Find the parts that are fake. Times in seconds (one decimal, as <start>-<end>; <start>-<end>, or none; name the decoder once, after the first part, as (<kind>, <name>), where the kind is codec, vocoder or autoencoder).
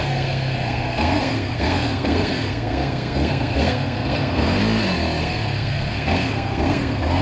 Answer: 0.0-4.6 (codec, SNAC); 5.2-7.2